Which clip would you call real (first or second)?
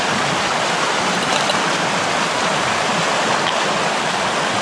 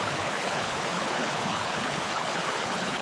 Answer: first